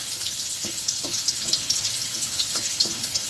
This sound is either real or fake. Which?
fake